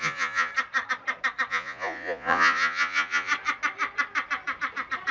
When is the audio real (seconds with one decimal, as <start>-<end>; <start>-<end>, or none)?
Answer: 0.5-1.5; 3.3-5.1